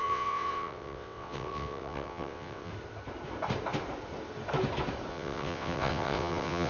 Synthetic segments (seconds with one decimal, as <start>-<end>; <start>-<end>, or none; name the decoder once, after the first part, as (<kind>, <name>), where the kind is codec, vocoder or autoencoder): 0.0-2.7 (vocoder, WaveNeXt); 5.1-6.7